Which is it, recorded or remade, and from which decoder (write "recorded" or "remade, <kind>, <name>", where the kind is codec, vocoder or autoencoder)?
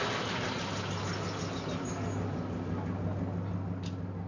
recorded